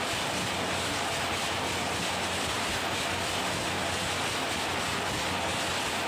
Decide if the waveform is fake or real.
real